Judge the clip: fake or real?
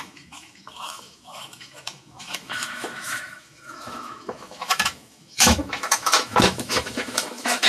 fake